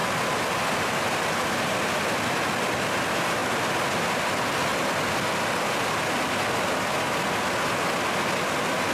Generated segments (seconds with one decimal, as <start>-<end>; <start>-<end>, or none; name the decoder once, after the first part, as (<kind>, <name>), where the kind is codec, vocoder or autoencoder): none

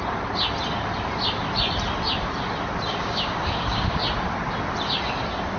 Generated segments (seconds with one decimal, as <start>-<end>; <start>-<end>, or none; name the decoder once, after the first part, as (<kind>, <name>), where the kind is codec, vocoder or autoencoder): 2.9-4.0 (codec, DAC)

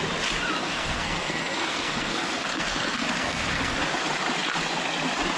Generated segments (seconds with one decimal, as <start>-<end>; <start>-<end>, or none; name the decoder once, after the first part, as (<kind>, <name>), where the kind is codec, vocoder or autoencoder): 0.6-3.8 (codec, SNAC)

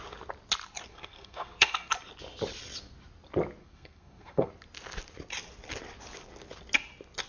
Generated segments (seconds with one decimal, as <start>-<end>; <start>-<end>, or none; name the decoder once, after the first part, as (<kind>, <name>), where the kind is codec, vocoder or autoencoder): 0.9-1.9 (codec, SNAC); 3.6-4.5

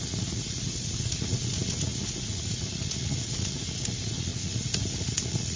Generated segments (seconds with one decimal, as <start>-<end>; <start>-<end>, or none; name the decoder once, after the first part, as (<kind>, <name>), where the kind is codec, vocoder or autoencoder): 0.0-5.6 (vocoder, Vocos)

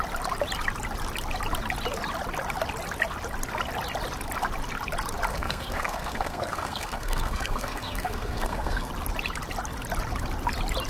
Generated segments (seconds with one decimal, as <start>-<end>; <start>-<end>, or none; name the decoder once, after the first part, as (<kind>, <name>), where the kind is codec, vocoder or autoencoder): 5.3-8.9 (codec, SNAC)

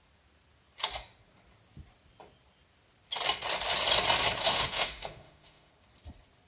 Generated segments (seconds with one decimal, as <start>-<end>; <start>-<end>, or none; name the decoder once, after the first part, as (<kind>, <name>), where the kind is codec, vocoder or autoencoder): 4.4-5.7 (autoencoder, DAC-VAE)

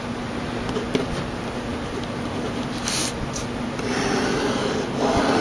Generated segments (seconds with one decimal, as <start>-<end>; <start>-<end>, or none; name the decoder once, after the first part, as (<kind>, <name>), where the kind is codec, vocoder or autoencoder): none